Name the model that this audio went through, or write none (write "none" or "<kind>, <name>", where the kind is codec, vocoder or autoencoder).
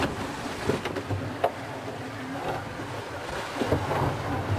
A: none